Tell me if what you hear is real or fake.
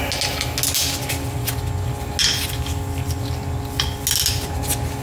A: real